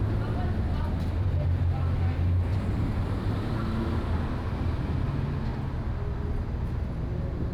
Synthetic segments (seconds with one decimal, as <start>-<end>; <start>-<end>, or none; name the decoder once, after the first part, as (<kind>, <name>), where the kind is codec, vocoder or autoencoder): 2.5-4.0 (vocoder, BigVGAN v2)